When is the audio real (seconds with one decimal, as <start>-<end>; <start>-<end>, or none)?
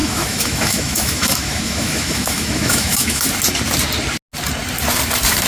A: 3.3-5.5